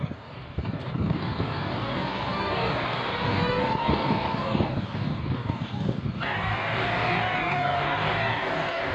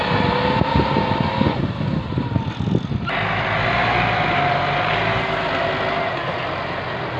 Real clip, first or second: second